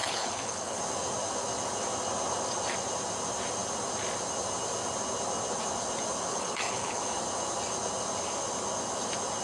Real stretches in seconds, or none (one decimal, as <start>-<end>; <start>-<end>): 0.8-6.3; 7.0-9.4